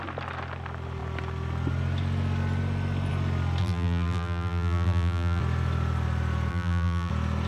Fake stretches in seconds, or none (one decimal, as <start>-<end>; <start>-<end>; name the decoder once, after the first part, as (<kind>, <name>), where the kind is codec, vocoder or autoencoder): 3.6-5.4 (vocoder, BigVGAN v2); 6.5-7.1